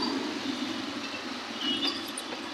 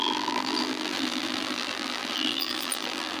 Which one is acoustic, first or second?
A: first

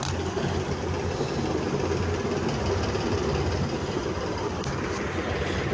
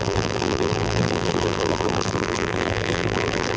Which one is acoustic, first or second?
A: first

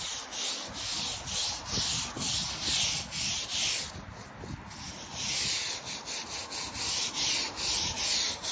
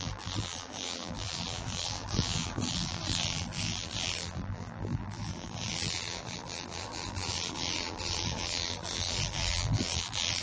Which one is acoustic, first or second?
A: first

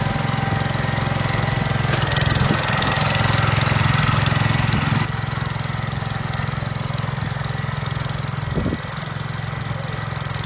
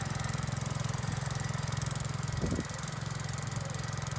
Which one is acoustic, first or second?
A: first